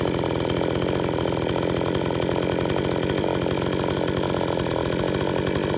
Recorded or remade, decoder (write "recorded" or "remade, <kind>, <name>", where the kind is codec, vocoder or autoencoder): recorded